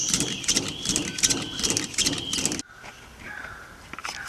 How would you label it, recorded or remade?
recorded